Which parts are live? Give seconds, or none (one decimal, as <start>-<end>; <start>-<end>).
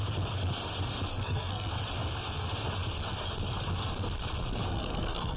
0.0-1.1; 1.7-4.7